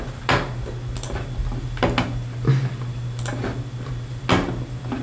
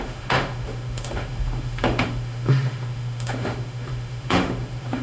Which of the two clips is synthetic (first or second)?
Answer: second